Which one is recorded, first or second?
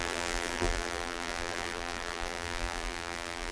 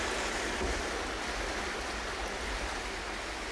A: second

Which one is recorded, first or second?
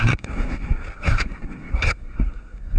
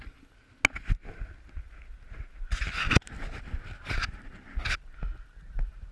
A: second